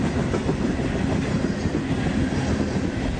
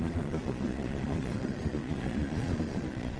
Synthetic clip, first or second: second